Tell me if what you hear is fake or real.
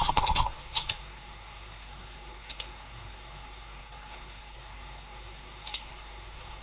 fake